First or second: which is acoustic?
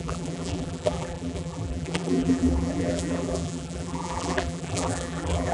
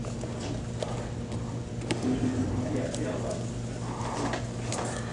second